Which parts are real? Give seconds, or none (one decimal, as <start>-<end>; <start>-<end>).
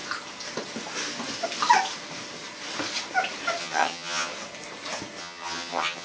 0.0-3.6; 4.3-5.2